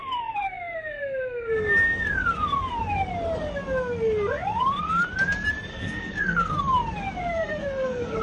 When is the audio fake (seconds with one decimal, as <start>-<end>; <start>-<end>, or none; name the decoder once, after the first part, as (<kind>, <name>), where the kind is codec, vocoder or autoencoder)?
5.7-6.6 (codec, SNAC); 7.2-8.2